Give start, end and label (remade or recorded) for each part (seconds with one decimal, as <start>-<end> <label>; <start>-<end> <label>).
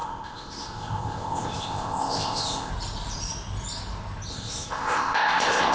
0.0-2.7 remade; 2.7-4.3 recorded; 4.3-5.7 remade